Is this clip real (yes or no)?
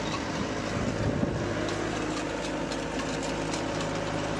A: yes